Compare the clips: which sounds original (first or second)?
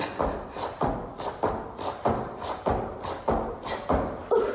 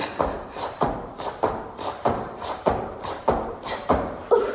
first